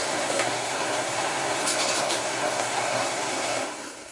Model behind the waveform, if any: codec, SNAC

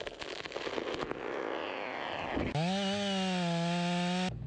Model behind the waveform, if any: none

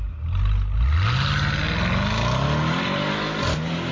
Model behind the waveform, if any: none